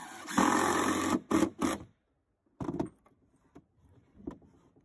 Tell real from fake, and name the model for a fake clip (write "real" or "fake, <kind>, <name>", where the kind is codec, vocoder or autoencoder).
real